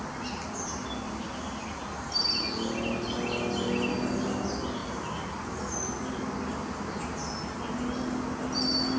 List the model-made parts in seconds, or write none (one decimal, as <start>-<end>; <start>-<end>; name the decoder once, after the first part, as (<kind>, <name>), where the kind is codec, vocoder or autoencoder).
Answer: none

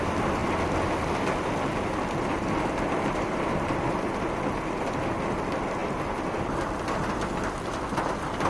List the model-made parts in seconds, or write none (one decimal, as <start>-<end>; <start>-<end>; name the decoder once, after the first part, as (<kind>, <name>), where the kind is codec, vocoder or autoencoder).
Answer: none